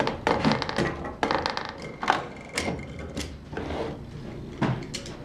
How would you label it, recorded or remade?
recorded